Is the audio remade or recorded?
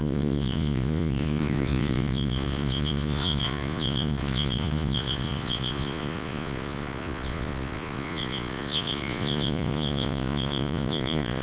remade